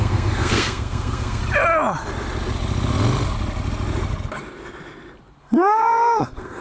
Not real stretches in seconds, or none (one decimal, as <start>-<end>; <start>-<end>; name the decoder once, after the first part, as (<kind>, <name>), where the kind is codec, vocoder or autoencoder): 0.0-1.4 (codec, SNAC); 5.4-6.6